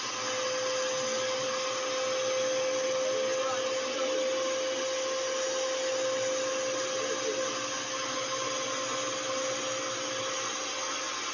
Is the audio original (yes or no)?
yes